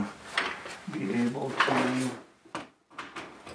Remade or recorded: recorded